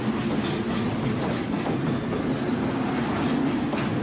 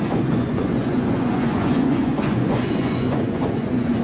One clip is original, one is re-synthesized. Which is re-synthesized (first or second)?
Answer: second